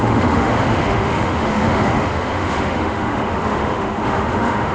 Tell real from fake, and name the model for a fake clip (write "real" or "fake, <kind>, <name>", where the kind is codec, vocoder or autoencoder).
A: fake, autoencoder, DAC-VAE